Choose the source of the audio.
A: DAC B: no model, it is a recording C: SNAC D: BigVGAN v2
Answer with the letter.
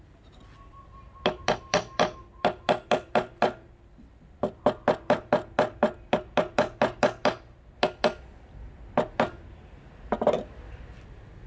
B